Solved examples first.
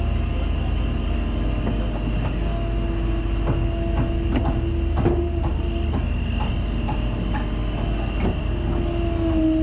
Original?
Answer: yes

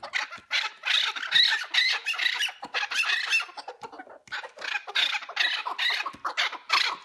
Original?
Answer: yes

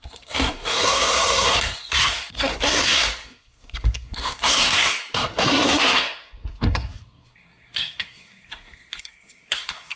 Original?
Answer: no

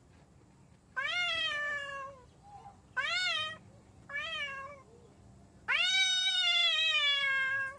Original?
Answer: yes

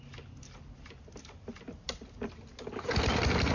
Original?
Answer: yes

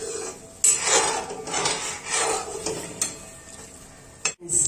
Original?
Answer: yes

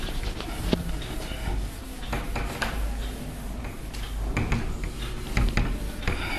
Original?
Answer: yes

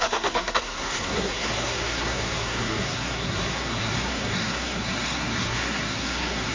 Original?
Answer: no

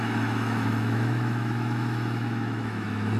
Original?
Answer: no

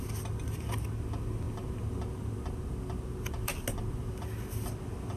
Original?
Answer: yes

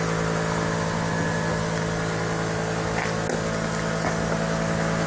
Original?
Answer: yes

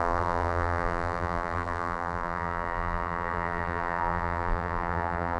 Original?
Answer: no